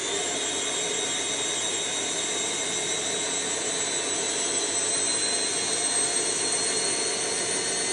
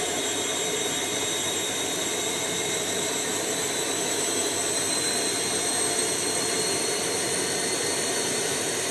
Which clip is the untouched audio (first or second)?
first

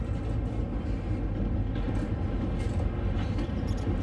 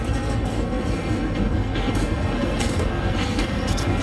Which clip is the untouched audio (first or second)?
first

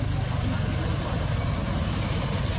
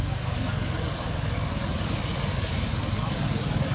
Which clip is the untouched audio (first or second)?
first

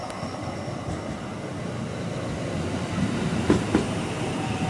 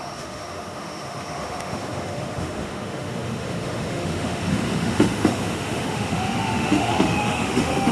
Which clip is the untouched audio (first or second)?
first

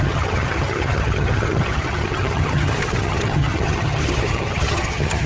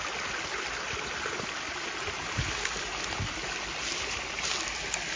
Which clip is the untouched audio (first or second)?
second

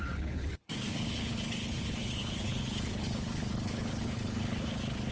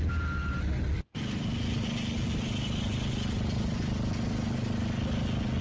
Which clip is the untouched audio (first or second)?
second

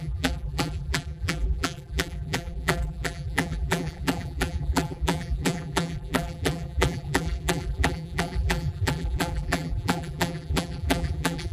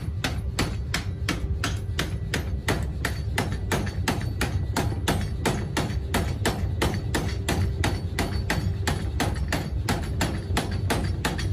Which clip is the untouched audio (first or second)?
second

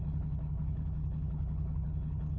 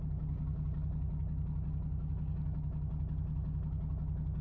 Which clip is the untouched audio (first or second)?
second